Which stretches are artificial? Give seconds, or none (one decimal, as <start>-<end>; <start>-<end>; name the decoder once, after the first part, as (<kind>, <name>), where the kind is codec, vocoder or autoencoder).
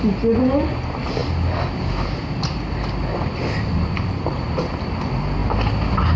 none